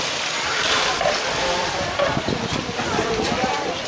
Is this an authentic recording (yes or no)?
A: no